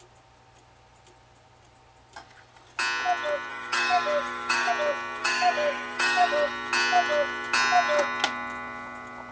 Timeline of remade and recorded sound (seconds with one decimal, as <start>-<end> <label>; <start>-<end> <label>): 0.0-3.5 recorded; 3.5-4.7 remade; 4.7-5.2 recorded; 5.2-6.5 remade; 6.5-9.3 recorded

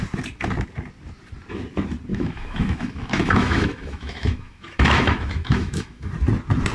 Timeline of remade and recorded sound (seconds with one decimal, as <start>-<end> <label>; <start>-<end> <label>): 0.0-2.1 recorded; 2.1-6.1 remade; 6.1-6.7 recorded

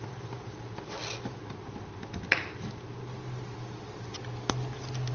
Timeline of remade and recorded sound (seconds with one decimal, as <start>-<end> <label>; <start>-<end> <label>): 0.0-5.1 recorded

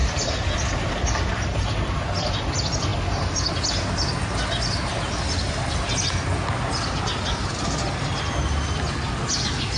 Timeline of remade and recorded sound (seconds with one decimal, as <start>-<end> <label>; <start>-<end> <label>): 0.0-9.8 recorded

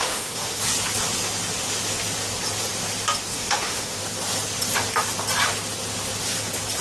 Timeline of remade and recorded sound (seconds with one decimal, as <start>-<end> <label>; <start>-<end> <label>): 0.0-0.6 remade; 0.6-3.3 recorded; 3.3-4.0 remade; 4.0-6.8 recorded

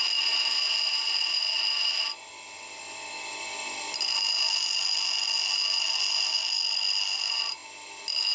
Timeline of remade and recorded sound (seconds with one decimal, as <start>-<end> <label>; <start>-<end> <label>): 0.0-8.3 recorded

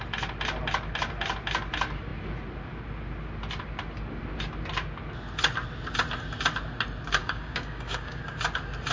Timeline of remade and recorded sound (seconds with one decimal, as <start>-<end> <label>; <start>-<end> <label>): 0.0-7.2 recorded; 7.2-8.2 remade; 8.2-8.9 recorded